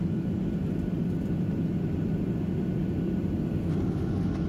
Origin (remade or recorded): recorded